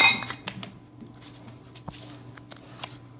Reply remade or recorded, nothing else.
recorded